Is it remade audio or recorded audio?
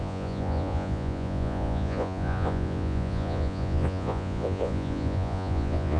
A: remade